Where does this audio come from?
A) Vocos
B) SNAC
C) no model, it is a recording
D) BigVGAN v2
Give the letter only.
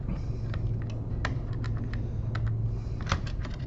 C